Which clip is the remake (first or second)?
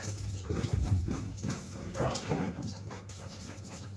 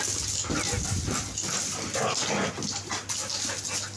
first